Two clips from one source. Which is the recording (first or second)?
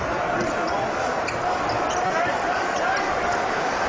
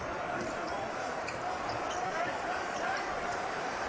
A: first